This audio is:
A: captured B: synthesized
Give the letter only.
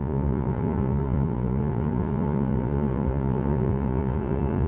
B